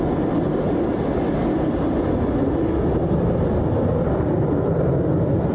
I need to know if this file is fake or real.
real